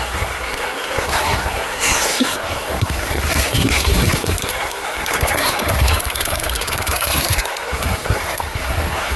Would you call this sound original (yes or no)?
no